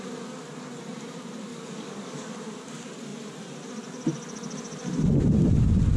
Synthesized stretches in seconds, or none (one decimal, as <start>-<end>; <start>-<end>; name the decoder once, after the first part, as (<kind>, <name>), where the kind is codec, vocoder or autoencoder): 1.5-2.3 (codec, DAC)